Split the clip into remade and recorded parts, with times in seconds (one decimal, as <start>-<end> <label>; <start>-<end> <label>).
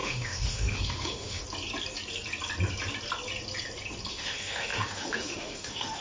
0.0-1.4 remade; 1.4-4.1 recorded; 4.1-6.0 remade